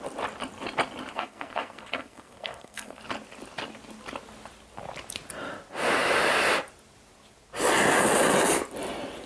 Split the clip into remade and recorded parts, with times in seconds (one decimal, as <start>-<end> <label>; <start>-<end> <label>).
0.0-1.1 recorded; 1.1-3.0 remade; 3.0-9.3 recorded